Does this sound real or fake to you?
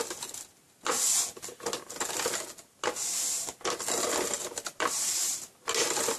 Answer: real